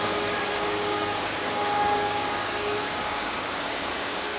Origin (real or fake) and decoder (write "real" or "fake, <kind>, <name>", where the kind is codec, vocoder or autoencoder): fake, codec, DAC